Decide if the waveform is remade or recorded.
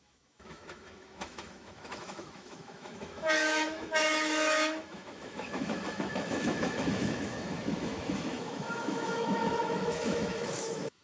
remade